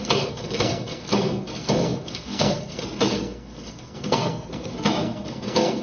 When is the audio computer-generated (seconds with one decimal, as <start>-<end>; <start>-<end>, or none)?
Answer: 0.0-5.8